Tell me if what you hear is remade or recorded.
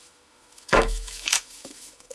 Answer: remade